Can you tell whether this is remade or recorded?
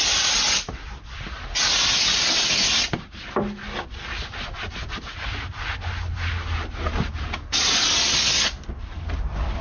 recorded